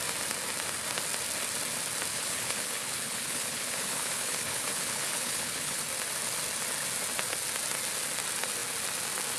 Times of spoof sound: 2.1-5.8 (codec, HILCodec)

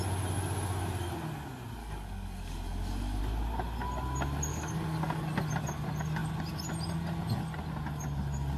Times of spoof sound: 1.8-3.2 (codec, DAC); 4.5-5.2

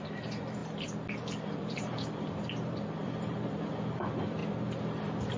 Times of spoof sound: 0.0-0.6 (vocoder, BigVGAN v2); 1.5-4.4; 5.0-5.4

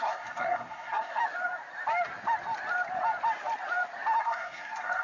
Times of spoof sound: 0.0-1.2 (codec, SNAC); 4.2-5.0

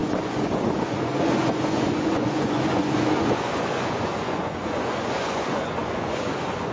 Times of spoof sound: 0.0-6.7 (vocoder, Vocos)